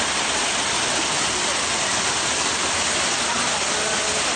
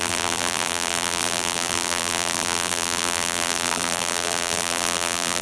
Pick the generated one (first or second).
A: second